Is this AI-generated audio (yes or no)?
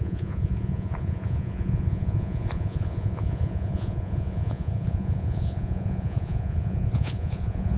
yes